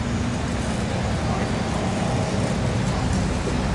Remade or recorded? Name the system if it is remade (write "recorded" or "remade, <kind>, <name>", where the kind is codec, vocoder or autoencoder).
recorded